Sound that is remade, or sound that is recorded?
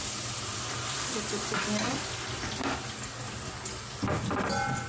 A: recorded